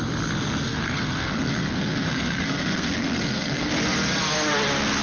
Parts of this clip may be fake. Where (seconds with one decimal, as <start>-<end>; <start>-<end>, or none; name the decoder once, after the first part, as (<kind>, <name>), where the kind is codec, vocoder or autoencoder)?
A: 0.7-3.7 (codec, SNAC)